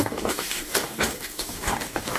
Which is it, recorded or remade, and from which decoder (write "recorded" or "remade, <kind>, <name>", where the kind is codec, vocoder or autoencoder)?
remade, codec, DAC